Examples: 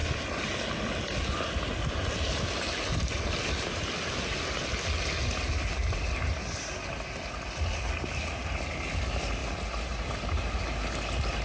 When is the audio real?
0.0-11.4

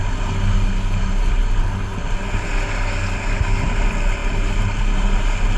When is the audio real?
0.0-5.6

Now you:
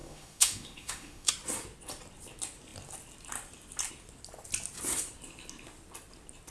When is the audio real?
1.3-6.5

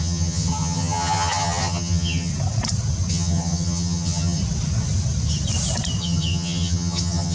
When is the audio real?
2.3-3.1; 4.4-6.0

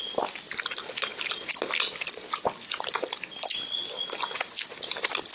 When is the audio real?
0.0-5.3

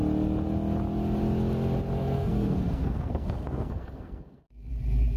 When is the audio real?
0.0-2.0; 4.7-5.2

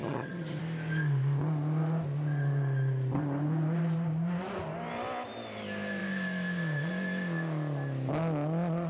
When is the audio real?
0.6-8.9

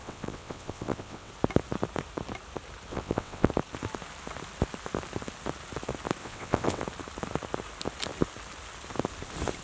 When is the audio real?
1.3-2.9; 3.5-6.2; 6.8-9.6